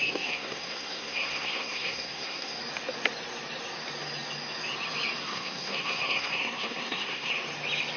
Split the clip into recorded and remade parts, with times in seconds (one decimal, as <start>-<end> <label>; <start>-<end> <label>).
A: 0.0-2.6 remade; 2.6-5.2 recorded; 5.2-7.3 remade; 7.3-8.0 recorded